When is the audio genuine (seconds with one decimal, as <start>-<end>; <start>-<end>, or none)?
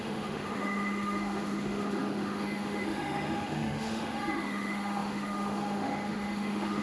none